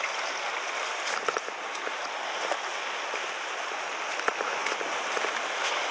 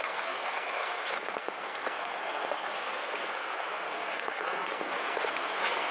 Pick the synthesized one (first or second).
second